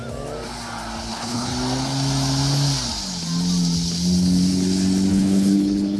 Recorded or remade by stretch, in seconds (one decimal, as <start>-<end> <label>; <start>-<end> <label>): 0.0-1.1 recorded; 1.1-1.5 remade; 1.5-5.1 recorded; 5.1-6.0 remade